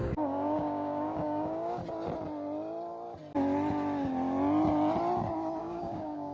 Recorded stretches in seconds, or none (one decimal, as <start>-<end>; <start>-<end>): 1.8-5.6